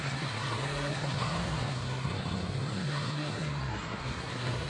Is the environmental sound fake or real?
fake